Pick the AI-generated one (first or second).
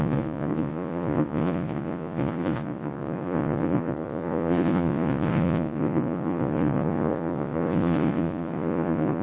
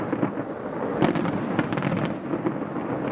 first